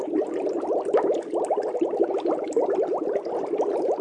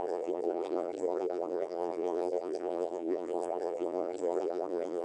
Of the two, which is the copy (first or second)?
second